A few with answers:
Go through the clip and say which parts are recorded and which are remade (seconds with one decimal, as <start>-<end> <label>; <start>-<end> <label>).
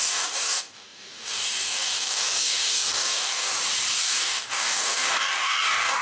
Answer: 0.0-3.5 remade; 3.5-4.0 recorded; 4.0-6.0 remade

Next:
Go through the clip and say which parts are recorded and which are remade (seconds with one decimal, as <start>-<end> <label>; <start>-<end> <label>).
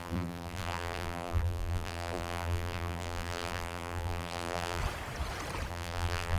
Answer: 0.0-4.8 remade; 4.8-5.7 recorded; 5.7-6.4 remade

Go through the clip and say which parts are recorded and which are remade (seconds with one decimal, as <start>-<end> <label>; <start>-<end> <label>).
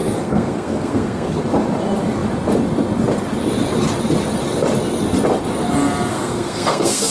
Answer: 0.0-1.4 remade; 1.4-6.1 recorded; 6.1-7.1 remade